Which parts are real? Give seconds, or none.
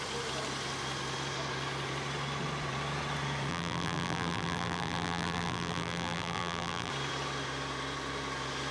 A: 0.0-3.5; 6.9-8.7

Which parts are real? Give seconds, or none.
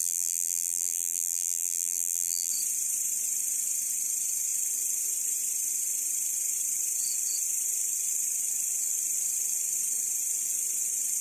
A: 2.5-11.2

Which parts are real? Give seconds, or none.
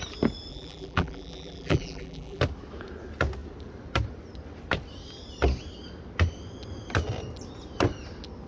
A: 0.0-0.5; 2.4-8.5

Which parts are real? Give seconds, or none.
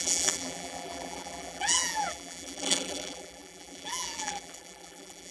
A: none